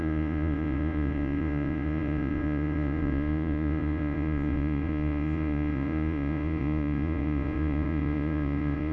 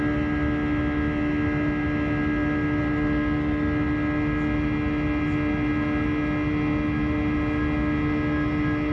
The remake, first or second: first